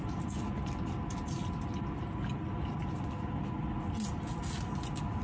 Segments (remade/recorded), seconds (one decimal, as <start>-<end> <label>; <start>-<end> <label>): 0.0-5.2 recorded